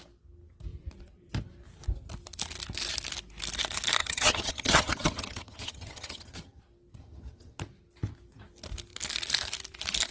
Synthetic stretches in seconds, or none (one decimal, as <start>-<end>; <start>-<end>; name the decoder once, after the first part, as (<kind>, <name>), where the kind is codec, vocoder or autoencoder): 4.0-6.6 (vocoder, HiFi-GAN); 7.0-7.6